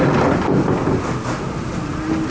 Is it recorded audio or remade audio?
recorded